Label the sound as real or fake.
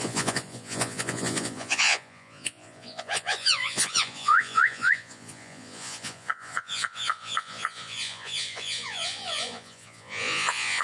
fake